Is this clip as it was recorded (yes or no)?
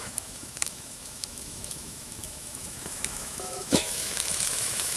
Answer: no